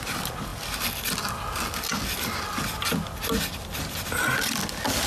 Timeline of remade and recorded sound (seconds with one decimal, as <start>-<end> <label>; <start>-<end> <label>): 0.0-5.1 recorded